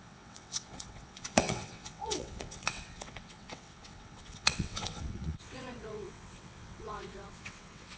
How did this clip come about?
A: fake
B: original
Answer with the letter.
A